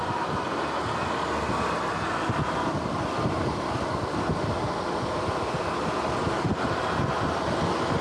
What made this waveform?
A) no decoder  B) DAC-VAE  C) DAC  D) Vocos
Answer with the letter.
A